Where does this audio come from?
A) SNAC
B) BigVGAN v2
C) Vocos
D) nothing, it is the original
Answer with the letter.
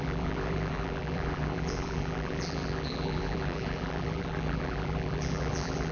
B